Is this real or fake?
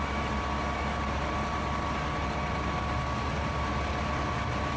real